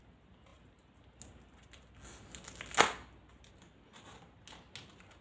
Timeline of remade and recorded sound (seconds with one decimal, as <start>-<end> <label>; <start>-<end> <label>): 0.0-5.2 recorded